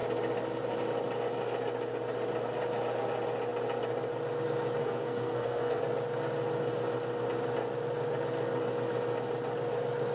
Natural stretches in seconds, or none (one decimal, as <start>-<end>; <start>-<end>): 0.0-4.8; 5.8-10.1